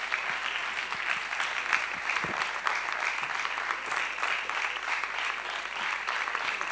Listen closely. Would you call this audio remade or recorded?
recorded